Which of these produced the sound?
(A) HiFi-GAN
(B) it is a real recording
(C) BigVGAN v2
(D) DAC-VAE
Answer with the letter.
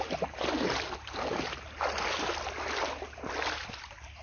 B